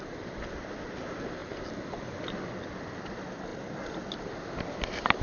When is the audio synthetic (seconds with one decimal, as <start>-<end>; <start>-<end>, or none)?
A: none